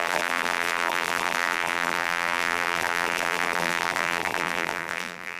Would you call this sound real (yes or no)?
no